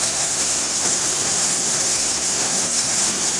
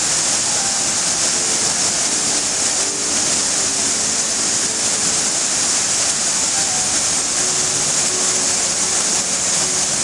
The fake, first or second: first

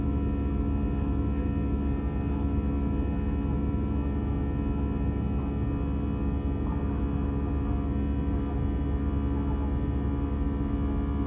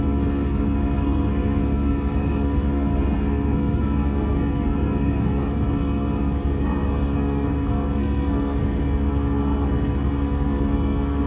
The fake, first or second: second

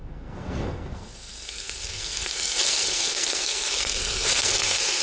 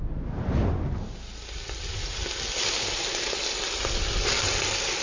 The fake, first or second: first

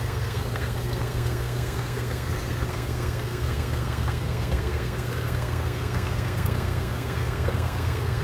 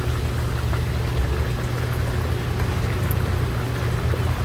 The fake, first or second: first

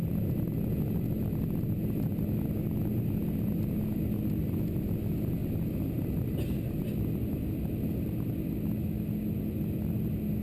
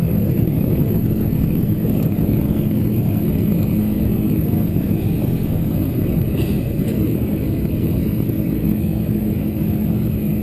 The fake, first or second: second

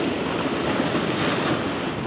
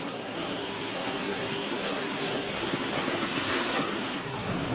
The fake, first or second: second